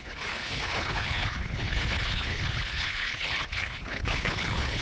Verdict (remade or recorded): remade